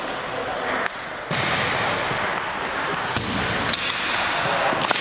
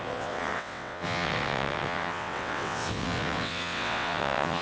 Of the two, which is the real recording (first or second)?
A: first